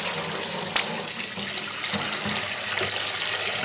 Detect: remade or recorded recorded